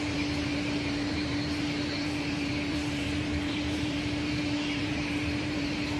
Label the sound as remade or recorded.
remade